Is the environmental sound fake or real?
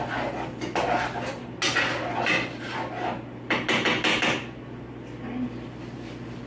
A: real